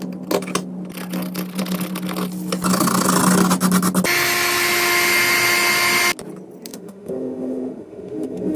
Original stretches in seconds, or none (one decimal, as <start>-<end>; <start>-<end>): 0.0-6.7